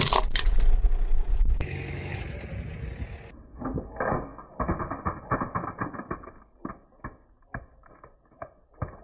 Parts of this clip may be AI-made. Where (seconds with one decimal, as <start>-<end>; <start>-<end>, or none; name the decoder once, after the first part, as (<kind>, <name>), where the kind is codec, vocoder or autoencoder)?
1.3-2.2 (codec, DAC)